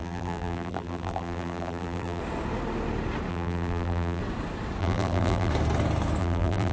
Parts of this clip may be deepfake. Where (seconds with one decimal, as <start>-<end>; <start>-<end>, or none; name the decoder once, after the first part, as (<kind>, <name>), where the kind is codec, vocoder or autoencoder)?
0.0-2.2 (vocoder, BigVGAN v2); 3.3-4.2; 4.8-5.5; 6.2-6.7